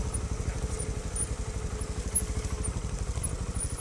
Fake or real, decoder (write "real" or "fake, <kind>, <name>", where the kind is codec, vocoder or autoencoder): real